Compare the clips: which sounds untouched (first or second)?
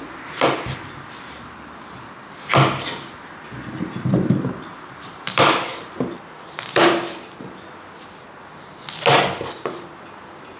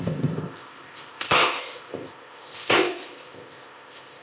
first